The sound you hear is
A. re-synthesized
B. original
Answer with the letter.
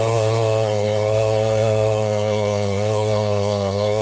A